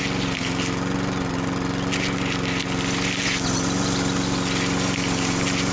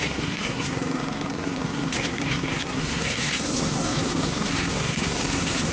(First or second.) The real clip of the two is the first